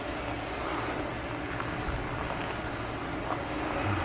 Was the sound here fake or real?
real